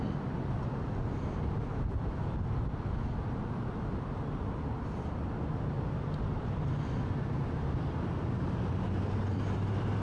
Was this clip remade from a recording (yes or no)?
no